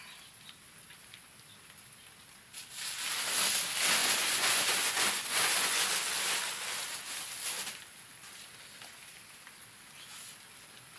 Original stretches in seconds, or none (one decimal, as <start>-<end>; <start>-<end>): 0.0-4.0; 5.9-11.0